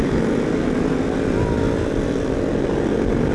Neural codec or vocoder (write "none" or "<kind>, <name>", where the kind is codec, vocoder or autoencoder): none